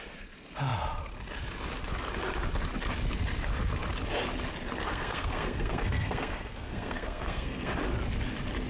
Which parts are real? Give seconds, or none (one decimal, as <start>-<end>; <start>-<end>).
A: 0.0-4.9; 7.7-8.7